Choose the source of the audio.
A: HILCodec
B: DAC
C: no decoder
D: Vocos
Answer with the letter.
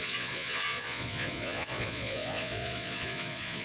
D